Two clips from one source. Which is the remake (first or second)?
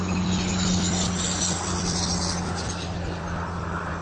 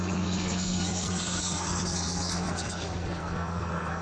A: second